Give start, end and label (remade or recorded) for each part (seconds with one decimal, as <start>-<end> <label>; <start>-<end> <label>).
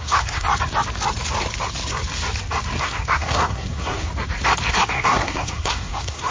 0.0-0.5 remade; 0.5-2.8 recorded; 2.8-4.1 remade; 4.1-4.7 recorded; 4.7-6.3 remade